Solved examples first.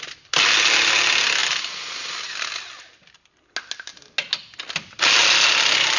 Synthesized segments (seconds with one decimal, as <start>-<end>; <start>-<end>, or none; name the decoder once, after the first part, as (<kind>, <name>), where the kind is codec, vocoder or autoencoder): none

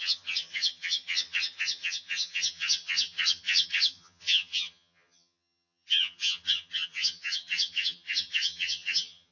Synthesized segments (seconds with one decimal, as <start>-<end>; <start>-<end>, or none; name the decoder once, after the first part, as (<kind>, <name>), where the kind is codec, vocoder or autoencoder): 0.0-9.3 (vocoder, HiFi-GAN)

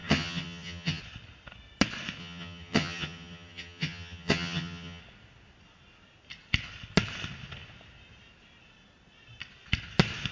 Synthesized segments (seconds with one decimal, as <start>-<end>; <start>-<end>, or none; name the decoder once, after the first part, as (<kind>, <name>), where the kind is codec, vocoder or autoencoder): 0.0-1.0 (vocoder, HiFi-GAN); 2.2-5.0